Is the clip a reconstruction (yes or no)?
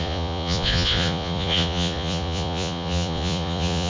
yes